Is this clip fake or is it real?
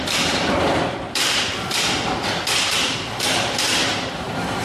fake